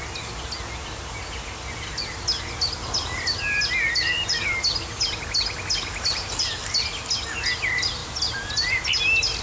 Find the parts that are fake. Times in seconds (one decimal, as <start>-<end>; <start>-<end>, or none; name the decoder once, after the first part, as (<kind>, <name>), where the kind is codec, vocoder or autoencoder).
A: none